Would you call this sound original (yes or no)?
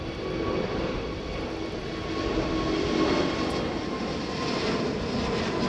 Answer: yes